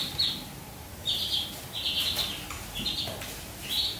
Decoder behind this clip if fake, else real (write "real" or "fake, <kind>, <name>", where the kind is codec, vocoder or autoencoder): real